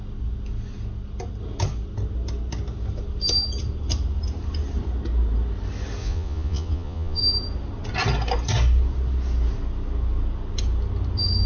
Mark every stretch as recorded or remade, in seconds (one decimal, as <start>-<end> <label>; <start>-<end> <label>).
0.0-6.0 recorded; 6.0-7.2 remade; 7.2-11.5 recorded